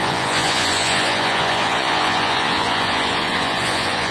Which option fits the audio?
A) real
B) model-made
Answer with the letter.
B